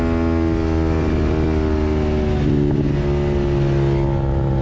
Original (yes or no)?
yes